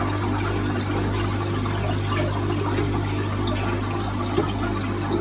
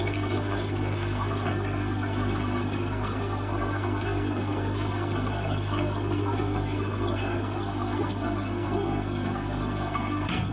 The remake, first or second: second